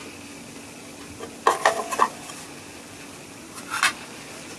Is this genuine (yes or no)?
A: yes